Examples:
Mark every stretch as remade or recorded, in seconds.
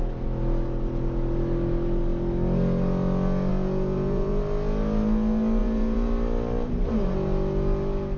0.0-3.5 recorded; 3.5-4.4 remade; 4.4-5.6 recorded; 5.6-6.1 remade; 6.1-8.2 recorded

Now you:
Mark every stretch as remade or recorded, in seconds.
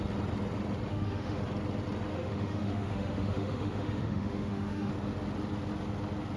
0.0-0.9 recorded; 0.9-1.4 remade; 1.4-2.1 recorded; 2.1-4.9 remade; 4.9-6.4 recorded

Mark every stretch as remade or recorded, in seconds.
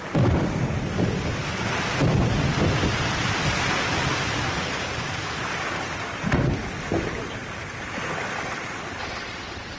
0.0-1.4 recorded; 1.4-6.6 remade; 6.6-9.8 recorded